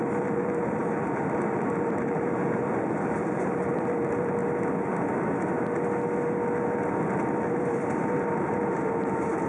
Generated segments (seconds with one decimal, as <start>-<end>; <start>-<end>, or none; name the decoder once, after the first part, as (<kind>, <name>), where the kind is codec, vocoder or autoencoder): 0.0-4.4 (vocoder, BigVGAN v2); 7.5-9.5